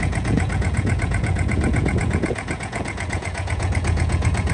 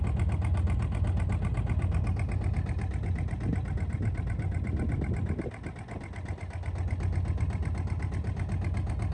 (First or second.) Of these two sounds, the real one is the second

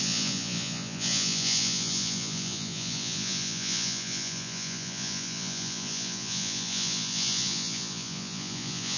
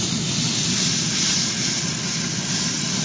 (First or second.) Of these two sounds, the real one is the second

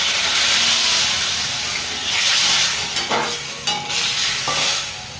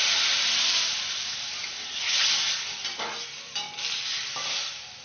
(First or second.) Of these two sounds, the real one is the first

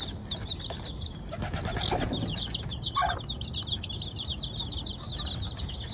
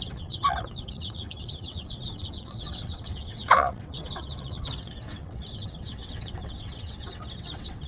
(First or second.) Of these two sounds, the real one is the first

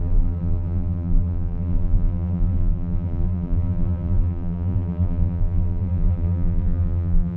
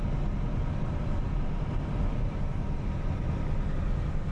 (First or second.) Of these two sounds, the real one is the second